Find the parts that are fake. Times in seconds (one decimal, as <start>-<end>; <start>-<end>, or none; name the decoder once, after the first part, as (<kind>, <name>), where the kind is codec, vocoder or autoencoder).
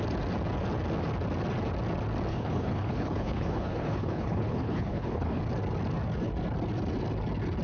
2.3-5.4 (codec, HILCodec)